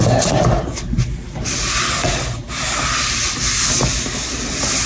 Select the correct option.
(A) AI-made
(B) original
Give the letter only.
B